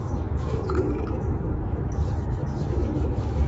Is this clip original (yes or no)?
no